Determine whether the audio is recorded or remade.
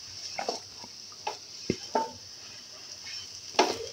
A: recorded